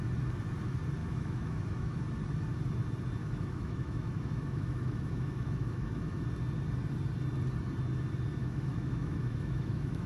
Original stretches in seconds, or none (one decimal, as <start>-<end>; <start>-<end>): 0.0-1.0; 2.0-3.2; 6.2-8.4